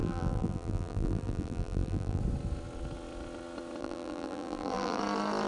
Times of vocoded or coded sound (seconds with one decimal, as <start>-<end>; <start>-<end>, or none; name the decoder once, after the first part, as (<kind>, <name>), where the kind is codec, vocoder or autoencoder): 0.0-2.2 (vocoder, BigVGAN v2); 3.8-5.0